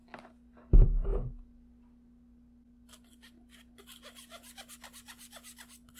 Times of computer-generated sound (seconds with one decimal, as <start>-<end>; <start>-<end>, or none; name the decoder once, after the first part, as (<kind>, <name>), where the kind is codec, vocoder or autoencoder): none